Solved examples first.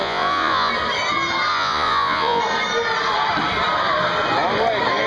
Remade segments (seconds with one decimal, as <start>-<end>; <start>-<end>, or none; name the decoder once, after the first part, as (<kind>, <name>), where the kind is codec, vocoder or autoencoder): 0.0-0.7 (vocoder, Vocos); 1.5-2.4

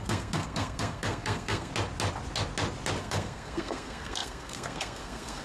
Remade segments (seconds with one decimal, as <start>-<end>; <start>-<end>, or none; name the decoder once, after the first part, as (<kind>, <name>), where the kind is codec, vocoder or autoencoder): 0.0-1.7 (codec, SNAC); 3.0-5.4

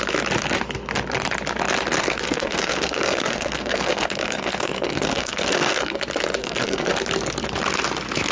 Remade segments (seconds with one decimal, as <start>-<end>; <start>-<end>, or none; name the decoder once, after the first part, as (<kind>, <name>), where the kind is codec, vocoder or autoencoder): 2.0-6.0 (codec, SNAC); 6.4-6.9